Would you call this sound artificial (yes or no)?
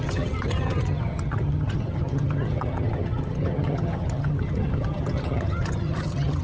yes